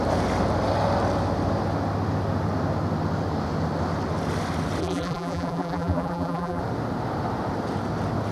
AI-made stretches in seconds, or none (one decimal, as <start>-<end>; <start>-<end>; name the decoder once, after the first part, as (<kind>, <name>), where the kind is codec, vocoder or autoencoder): 4.8-6.6 (vocoder, BigVGAN v2)